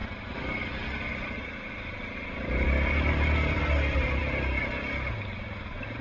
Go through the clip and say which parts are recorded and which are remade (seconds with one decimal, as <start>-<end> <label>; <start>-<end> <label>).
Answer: 0.0-6.0 recorded